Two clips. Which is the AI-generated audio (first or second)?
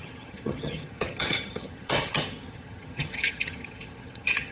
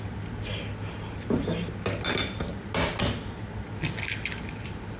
first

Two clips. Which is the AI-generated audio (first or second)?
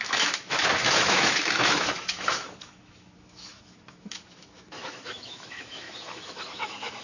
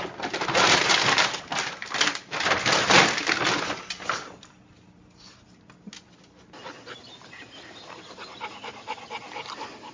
first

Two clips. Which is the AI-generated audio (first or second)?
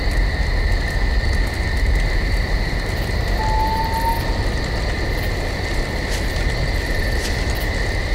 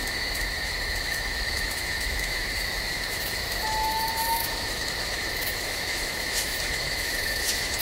second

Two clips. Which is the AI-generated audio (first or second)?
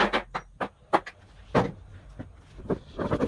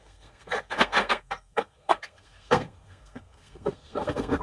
second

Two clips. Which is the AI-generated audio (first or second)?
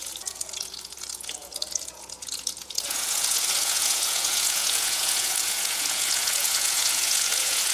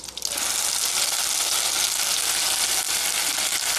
first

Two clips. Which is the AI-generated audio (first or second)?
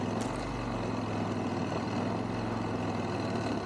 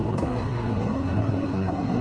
second